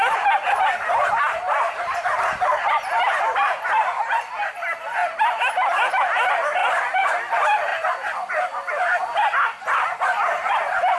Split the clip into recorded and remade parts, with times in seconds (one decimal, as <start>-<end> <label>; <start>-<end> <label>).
0.0-11.0 recorded